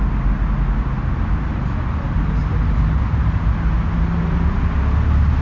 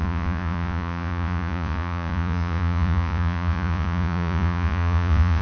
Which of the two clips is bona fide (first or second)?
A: first